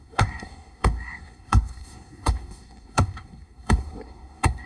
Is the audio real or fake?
fake